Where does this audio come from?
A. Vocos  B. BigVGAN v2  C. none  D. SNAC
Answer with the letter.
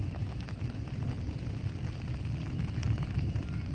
C